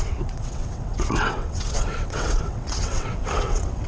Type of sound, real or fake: fake